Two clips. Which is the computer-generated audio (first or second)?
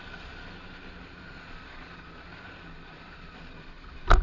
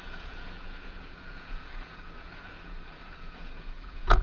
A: second